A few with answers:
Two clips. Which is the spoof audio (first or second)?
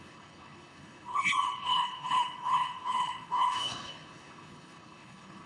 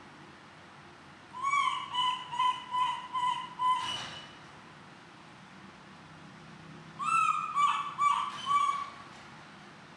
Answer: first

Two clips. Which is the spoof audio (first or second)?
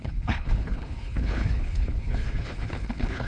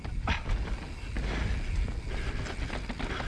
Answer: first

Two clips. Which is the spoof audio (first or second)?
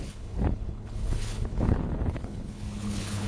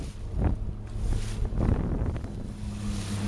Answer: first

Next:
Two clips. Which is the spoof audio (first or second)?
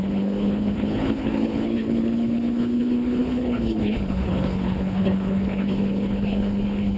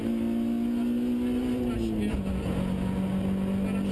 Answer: first